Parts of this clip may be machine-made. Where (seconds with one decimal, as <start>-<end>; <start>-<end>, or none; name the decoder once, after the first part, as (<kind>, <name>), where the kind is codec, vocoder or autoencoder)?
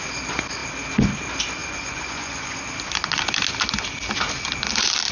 1.6-2.6 (vocoder, Vocos)